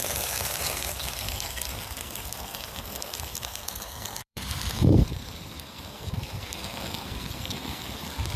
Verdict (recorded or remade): remade